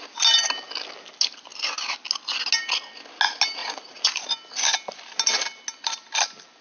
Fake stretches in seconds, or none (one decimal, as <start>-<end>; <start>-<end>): 3.6-4.2